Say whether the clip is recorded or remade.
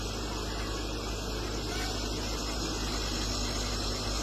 recorded